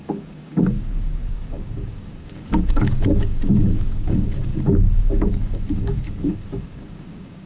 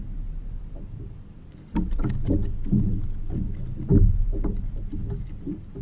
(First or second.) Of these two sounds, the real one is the second